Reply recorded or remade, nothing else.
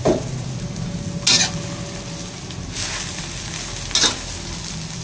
recorded